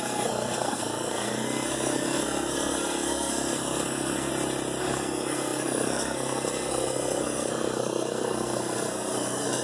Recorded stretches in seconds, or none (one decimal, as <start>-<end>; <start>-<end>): 4.3-4.8